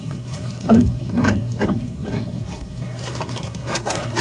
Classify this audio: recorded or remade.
remade